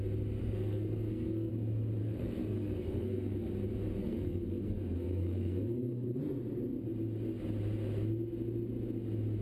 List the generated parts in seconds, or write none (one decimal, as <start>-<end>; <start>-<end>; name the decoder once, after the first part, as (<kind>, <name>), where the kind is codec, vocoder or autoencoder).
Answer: 0.4-1.5 (codec, SNAC); 2.0-3.5; 4.0-6.2